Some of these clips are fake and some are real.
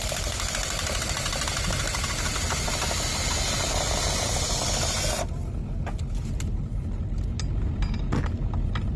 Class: real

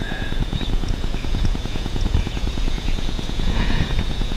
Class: fake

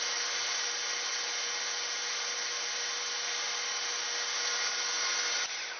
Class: real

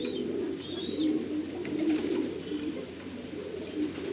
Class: real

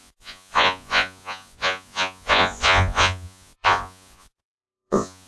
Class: fake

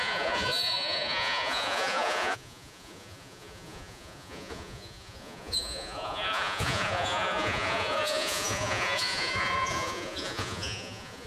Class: fake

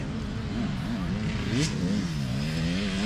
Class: real